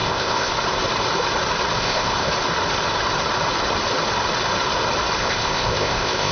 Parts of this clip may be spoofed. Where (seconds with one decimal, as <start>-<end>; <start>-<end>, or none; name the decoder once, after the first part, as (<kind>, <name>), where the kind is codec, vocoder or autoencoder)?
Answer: 0.0-0.5 (codec, ZipCodec); 1.8-2.3; 5.2-6.3